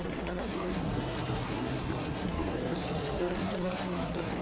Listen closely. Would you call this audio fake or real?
fake